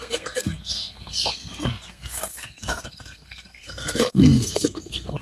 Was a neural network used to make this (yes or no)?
yes